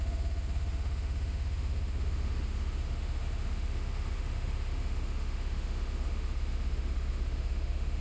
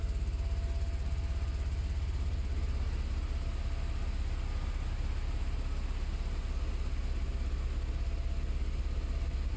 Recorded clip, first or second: second